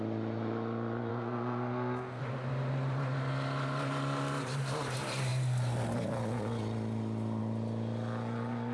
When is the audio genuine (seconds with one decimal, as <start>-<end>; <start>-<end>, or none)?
0.0-1.1; 2.2-8.7